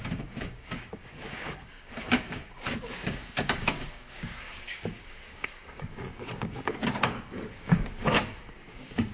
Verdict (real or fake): fake